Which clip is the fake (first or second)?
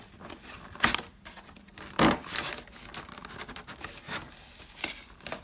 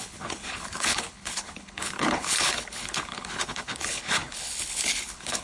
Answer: second